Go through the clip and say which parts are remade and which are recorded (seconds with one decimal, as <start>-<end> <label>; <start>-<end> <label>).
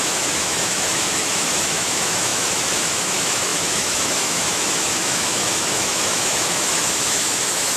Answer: 0.0-7.8 remade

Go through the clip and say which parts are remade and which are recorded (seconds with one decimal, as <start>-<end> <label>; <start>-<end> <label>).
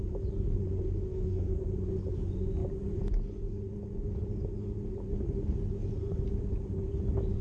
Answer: 0.0-1.1 recorded; 1.1-1.6 remade; 1.6-7.4 recorded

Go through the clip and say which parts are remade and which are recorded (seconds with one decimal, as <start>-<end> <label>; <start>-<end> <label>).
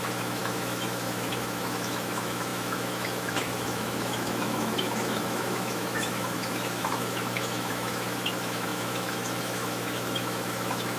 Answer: 0.0-11.0 remade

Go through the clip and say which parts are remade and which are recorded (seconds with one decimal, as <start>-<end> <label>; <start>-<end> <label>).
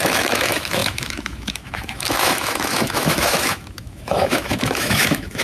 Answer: 0.0-5.4 remade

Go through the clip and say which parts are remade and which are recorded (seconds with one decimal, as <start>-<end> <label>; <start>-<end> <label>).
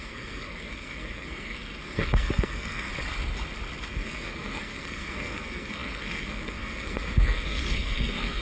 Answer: 0.0-2.9 remade; 2.9-3.9 recorded; 3.9-8.4 remade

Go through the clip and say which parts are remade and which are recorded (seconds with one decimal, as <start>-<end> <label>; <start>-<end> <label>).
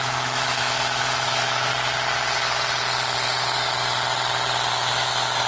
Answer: 0.0-1.7 remade; 1.7-4.7 recorded; 4.7-5.5 remade